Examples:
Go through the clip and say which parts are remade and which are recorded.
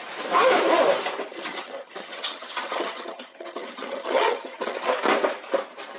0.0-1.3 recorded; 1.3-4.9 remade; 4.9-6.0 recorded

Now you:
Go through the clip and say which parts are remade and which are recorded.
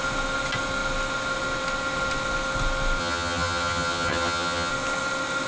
0.0-3.0 recorded; 3.0-4.7 remade; 4.7-5.5 recorded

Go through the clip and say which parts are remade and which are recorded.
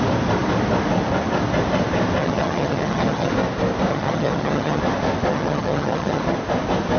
0.0-2.2 recorded; 2.2-3.3 remade; 3.3-3.9 recorded; 3.9-4.8 remade; 4.8-5.3 recorded; 5.3-6.2 remade; 6.2-7.0 recorded